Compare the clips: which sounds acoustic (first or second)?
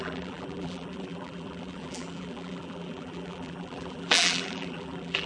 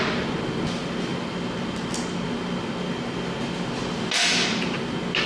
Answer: second